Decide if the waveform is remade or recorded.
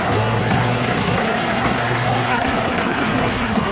remade